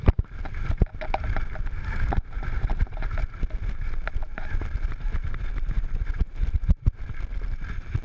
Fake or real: real